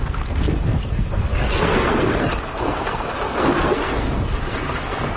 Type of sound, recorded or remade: remade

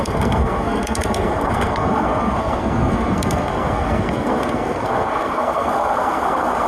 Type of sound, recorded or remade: remade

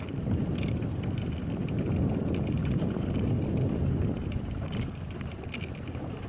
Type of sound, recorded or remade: recorded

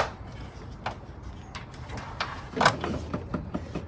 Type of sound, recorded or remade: recorded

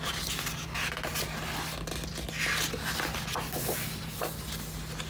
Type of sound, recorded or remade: recorded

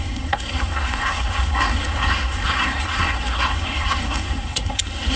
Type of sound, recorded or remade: remade